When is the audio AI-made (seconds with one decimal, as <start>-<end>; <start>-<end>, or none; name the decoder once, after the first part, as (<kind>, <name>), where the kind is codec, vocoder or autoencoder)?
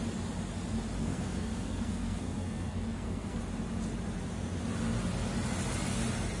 1.0-3.4 (codec, SNAC)